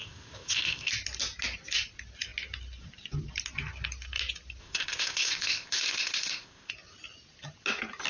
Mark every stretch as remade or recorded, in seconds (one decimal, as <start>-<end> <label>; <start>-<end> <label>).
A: 0.0-0.9 remade; 0.9-4.6 recorded; 4.6-6.7 remade; 6.7-8.1 recorded